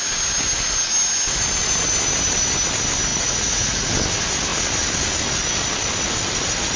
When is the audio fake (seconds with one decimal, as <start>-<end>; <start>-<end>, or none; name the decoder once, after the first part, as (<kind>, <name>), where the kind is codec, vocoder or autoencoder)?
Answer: 3.1-3.9 (vocoder, Vocos)